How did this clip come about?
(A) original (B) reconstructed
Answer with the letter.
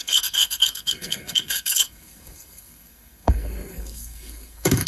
B